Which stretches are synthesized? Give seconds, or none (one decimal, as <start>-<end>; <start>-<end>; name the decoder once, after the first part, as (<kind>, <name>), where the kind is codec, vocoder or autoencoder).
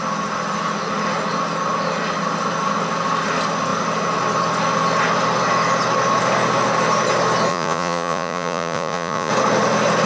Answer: 7.5-9.3 (vocoder, Vocos)